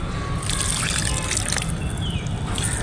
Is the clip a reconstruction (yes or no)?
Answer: no